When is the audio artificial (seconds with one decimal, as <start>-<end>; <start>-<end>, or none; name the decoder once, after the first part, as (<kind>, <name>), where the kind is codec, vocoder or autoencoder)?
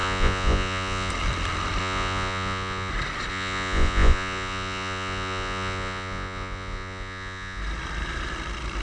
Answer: 0.0-1.1 (vocoder, Vocos); 1.8-2.9; 3.3-7.6